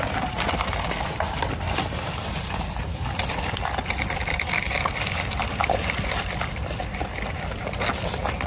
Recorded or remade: recorded